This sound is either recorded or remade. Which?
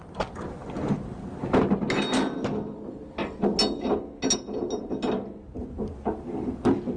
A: recorded